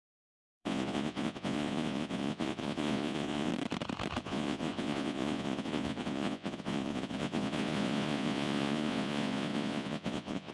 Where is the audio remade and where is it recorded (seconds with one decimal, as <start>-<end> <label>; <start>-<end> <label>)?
0.0-3.5 remade; 3.5-4.2 recorded; 4.2-10.5 remade